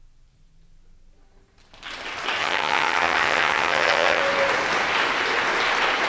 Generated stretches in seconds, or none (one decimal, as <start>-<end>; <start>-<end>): 2.4-4.2